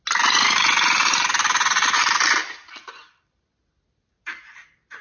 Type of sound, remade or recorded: recorded